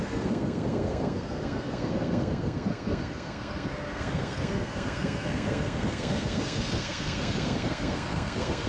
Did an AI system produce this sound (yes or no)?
yes